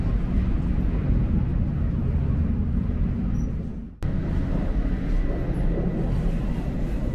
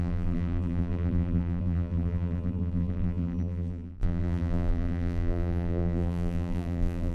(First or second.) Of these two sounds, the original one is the first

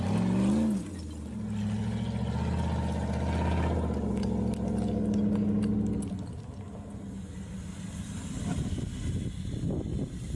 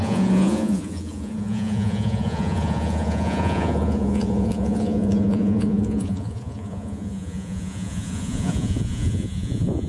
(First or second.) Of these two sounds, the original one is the first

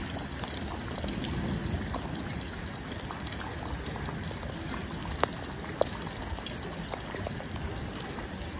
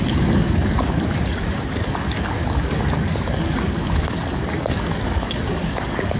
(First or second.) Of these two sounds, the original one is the first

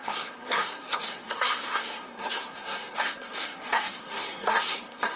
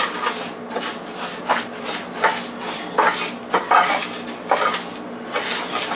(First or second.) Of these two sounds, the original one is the second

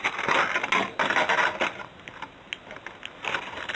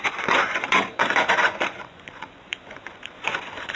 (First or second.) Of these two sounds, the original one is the first